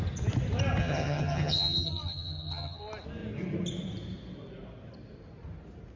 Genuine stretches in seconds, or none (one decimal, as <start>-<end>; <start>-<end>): 0.0-0.8; 2.8-6.0